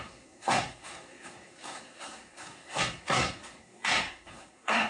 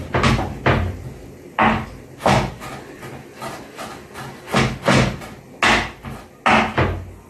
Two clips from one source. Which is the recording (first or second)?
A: second